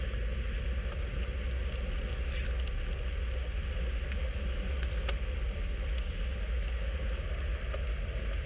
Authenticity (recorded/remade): recorded